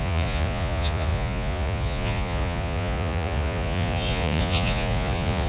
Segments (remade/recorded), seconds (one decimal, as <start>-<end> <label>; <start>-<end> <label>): 0.0-5.5 remade